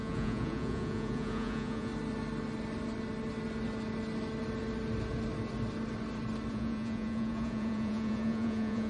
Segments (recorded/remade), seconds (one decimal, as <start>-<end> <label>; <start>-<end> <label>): 0.0-1.9 remade; 1.9-6.5 recorded; 6.5-8.9 remade